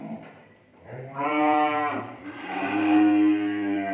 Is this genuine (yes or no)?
no